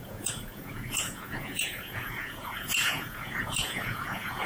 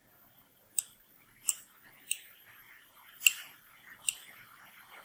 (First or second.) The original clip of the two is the second